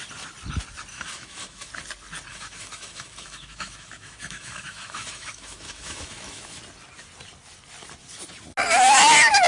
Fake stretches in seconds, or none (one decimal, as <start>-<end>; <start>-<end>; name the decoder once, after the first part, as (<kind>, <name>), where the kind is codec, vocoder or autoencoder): 0.9-1.7 (autoencoder, DAC-VAE); 2.3-6.6